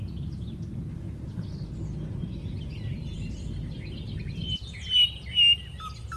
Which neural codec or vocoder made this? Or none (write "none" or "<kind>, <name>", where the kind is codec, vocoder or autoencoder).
none